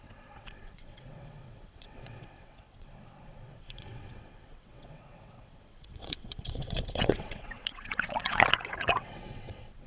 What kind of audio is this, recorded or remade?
remade